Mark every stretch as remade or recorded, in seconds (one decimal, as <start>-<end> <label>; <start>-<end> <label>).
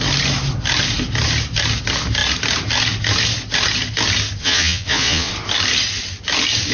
0.0-4.4 recorded; 4.4-5.3 remade; 5.3-6.7 recorded